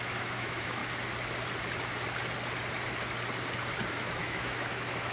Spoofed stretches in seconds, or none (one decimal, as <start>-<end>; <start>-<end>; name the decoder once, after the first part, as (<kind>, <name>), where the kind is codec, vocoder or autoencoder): 0.0-0.8 (autoencoder, DAC-VAE); 3.9-5.1